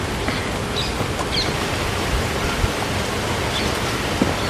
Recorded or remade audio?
recorded